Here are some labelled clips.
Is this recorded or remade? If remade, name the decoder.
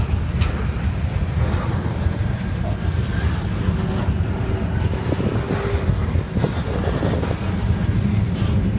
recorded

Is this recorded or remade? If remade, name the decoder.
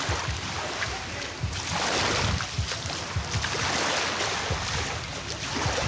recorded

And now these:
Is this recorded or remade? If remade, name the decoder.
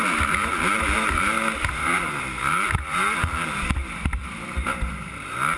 remade, vocoder, BigVGAN v2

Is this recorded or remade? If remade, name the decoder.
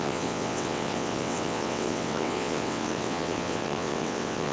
remade, vocoder, WaveNeXt